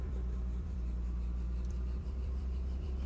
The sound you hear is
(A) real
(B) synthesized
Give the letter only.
B